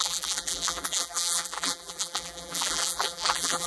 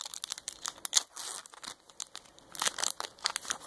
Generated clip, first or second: first